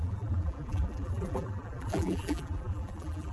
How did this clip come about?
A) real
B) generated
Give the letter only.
B